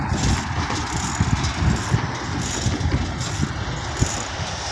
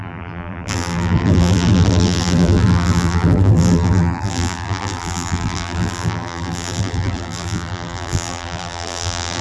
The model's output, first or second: second